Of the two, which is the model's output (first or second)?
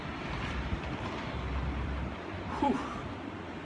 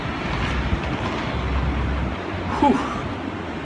first